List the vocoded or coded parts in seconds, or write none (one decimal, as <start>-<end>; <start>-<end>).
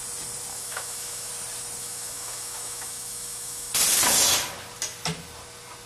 0.5-1.3; 1.8-3.7